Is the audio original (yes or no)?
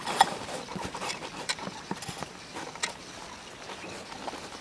yes